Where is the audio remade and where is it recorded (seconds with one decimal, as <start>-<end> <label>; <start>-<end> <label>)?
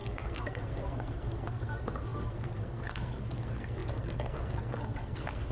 0.0-5.5 remade